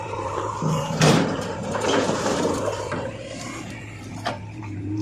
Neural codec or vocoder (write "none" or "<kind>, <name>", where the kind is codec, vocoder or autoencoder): vocoder, BigVGAN v2